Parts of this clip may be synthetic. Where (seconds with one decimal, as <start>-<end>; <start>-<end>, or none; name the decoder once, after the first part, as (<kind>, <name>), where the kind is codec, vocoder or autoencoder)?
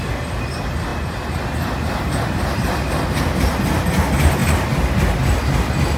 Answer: none